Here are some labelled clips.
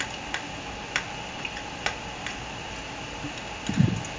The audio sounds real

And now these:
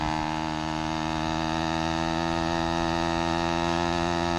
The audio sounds real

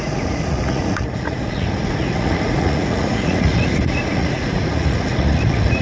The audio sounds fake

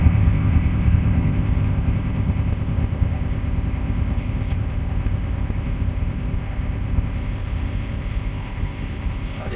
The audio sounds fake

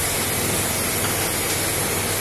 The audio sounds real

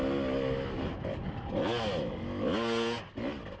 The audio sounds real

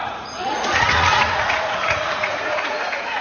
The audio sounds fake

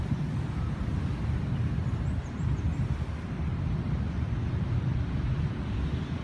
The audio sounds real